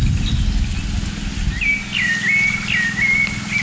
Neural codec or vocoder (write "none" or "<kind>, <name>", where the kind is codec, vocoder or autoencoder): none